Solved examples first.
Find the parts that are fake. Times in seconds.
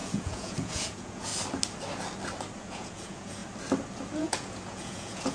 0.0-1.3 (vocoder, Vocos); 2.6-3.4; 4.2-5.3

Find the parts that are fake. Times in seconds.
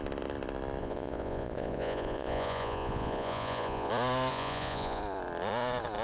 0.8-3.9 (vocoder, Vocos); 4.3-5.0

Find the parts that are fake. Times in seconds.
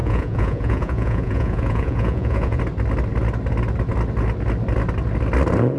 0.0-2.6 (vocoder, Vocos)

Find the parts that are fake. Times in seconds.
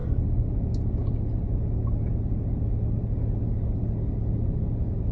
none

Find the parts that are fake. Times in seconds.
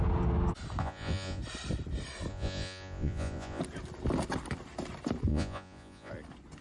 0.8-1.4 (vocoder, Vocos); 2.3-3.6; 5.3-6.1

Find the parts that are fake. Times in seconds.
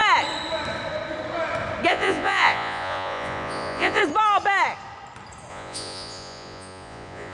1.9-4.0 (vocoder, Vocos); 5.5-7.3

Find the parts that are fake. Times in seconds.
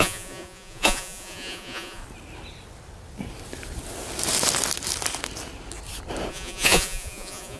0.0-2.0 (vocoder, Vocos); 6.3-7.6